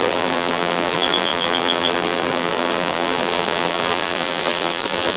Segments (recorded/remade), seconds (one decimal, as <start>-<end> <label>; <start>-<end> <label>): 0.0-5.2 remade